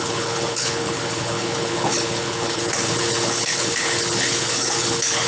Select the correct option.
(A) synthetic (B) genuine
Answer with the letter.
A